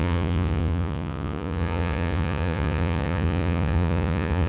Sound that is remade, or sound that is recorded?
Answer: remade